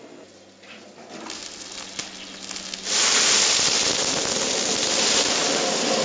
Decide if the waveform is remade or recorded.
recorded